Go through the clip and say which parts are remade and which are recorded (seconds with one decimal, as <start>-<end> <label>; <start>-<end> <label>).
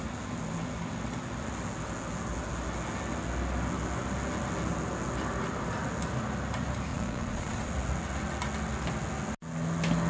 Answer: 0.0-6.9 recorded; 6.9-7.7 remade; 7.7-10.1 recorded